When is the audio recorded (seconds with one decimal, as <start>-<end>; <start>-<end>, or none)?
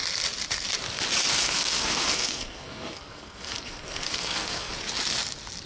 0.0-1.3; 4.7-5.7